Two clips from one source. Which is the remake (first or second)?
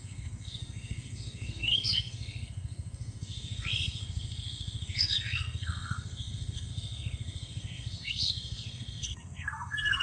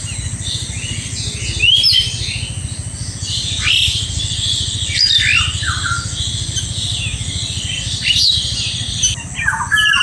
first